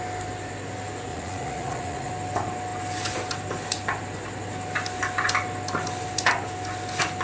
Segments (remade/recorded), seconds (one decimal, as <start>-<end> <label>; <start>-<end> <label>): 0.0-1.1 recorded; 1.1-2.1 remade; 2.1-7.2 recorded